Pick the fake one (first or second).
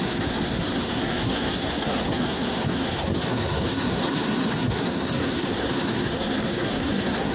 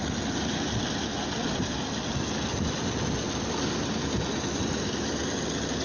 first